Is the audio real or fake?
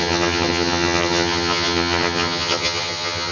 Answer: fake